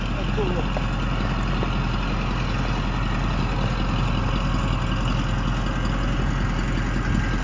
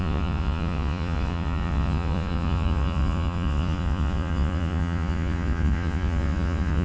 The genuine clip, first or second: first